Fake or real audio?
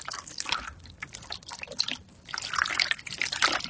real